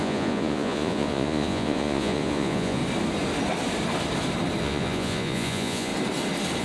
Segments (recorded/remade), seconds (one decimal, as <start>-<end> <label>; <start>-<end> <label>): 0.0-2.8 remade; 2.8-4.6 recorded; 4.6-5.9 remade; 5.9-6.6 recorded